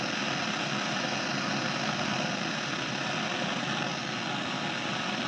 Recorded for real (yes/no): yes